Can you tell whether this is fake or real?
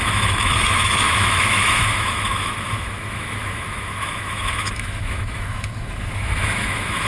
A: fake